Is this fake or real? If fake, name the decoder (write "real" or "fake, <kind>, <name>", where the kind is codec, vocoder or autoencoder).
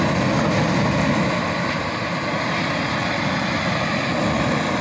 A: real